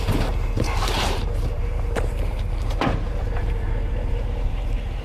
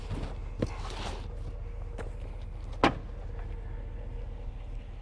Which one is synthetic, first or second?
first